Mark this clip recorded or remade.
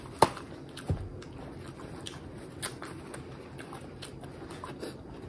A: recorded